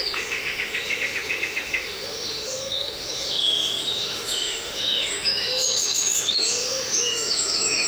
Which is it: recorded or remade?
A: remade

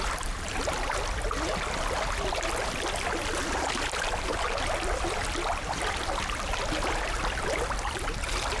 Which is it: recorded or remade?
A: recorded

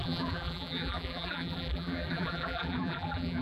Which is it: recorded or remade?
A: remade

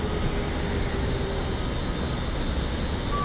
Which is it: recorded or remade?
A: recorded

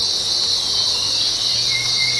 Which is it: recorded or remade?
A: recorded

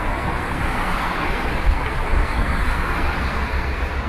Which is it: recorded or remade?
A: remade